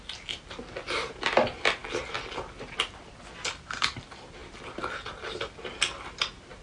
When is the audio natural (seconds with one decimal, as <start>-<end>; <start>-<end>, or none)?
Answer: 0.0-6.6